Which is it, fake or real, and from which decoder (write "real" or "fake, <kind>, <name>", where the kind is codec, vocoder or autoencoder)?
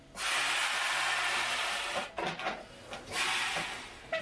real